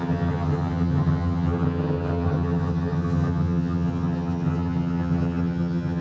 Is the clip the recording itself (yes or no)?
no